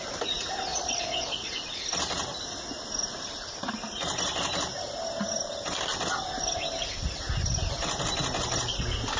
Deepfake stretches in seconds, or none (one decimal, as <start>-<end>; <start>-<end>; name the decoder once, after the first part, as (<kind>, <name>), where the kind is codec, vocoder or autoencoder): 0.7-1.5 (vocoder, Vocos)